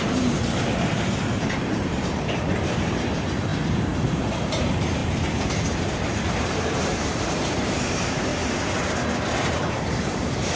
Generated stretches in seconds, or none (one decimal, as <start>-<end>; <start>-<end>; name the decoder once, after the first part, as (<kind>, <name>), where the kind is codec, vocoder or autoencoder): 0.0-8.3 (vocoder, BigVGAN v2); 9.2-10.6